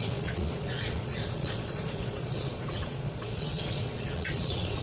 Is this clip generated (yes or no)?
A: yes